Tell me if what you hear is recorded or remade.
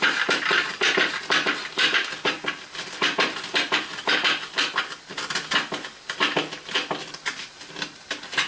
remade